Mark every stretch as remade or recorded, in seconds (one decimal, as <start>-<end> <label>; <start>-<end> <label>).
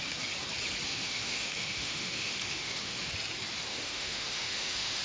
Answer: 0.0-0.9 recorded; 0.9-3.1 remade; 3.1-3.7 recorded; 3.7-5.0 remade